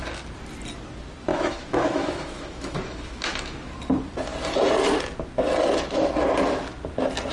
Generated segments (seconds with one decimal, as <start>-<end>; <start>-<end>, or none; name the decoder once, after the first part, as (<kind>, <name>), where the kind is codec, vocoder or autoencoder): 1.3-3.7 (autoencoder, DAC-VAE)